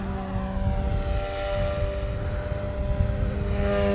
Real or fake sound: real